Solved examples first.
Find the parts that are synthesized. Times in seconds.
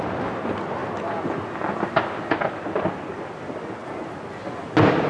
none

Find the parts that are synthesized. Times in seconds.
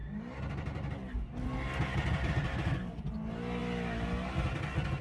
none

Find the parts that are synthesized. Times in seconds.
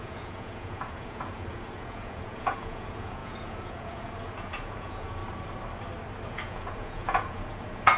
0.0-5.2; 6.3-8.0